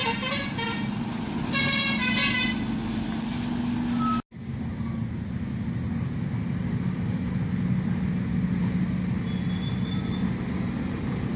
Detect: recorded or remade recorded